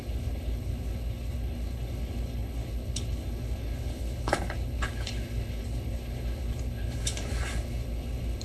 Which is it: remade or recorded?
remade